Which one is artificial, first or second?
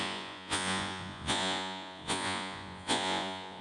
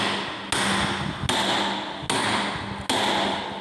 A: first